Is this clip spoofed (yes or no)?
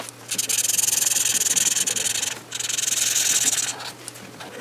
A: no